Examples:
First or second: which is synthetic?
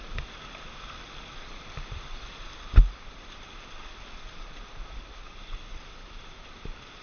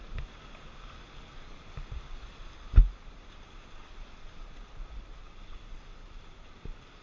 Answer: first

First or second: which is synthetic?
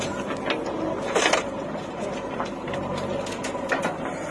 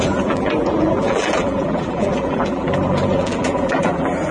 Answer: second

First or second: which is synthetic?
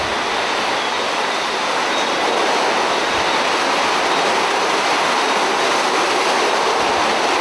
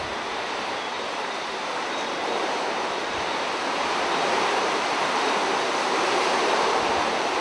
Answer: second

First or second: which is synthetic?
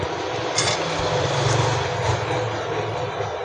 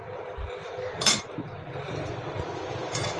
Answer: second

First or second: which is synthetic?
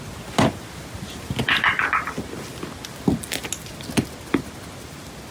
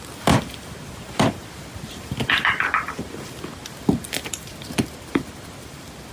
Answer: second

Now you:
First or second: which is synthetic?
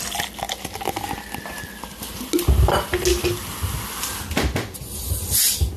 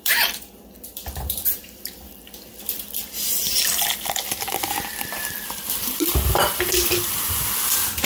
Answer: second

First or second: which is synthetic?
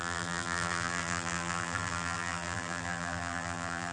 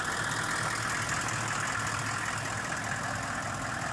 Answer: first